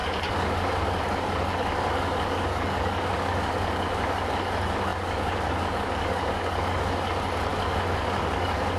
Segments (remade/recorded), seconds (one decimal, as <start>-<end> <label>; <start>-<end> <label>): 0.0-8.8 remade